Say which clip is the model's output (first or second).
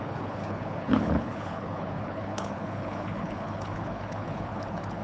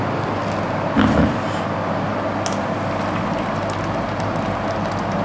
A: first